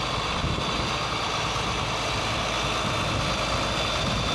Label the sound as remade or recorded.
recorded